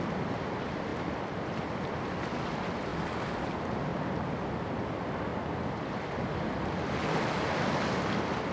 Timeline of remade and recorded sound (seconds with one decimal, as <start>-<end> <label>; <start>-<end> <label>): 0.0-8.5 recorded